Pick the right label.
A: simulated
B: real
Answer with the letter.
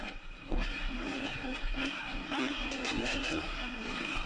A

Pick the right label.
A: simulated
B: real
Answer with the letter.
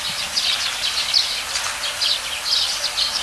B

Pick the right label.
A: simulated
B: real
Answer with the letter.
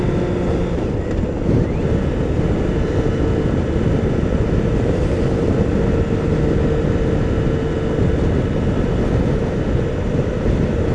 B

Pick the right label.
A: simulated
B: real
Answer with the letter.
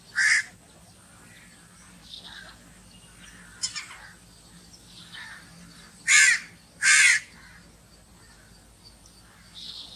B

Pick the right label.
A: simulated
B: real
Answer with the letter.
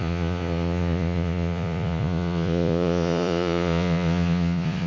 A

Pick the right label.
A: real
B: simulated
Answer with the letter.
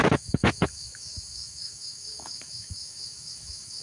B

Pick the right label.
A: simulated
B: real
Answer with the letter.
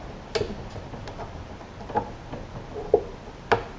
B